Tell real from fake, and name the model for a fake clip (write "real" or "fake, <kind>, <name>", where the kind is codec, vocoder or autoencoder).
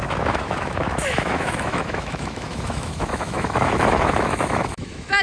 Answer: fake, autoencoder, DAC-VAE